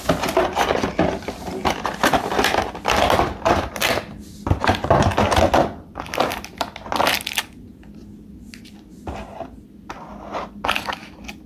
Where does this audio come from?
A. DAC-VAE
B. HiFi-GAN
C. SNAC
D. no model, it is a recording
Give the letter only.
D